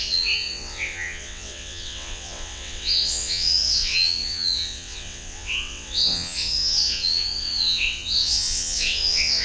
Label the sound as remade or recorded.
remade